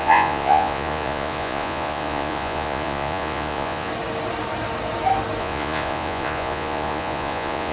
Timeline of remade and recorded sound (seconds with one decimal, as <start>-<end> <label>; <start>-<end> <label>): 0.0-3.9 remade; 3.9-5.4 recorded; 5.4-7.7 remade